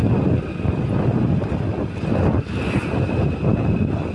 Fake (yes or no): no